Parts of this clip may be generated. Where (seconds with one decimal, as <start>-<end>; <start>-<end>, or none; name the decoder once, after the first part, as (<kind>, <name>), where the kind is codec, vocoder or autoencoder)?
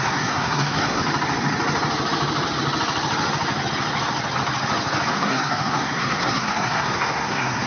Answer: 0.0-1.0 (codec, SNAC); 5.1-7.7